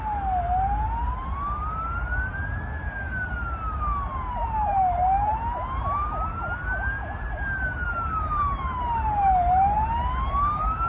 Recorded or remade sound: recorded